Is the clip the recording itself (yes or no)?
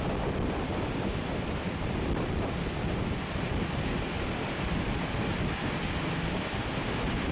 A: yes